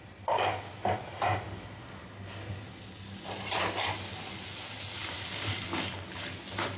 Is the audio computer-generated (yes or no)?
no